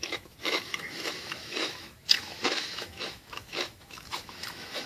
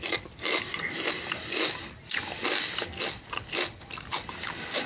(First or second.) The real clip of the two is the second